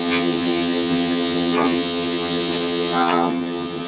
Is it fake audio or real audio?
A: fake